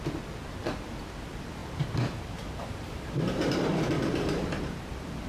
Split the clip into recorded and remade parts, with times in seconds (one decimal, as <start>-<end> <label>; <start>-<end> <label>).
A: 0.0-1.6 recorded; 1.6-4.8 remade; 4.8-5.3 recorded